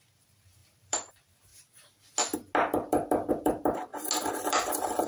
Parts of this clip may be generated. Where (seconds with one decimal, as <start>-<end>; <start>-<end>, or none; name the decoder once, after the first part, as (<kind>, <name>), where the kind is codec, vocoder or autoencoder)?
0.0-1.5 (vocoder, BigVGAN v2); 3.3-3.9; 4.5-5.1